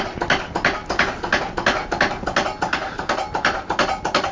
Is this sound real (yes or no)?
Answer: yes